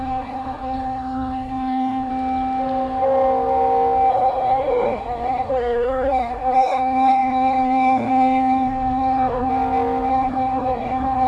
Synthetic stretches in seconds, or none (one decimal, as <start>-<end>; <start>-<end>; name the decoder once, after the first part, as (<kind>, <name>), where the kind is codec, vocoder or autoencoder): 0.0-2.1 (codec, SNAC); 4.1-9.5; 10.1-11.3